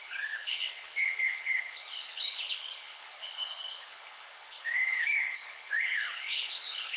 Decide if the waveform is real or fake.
fake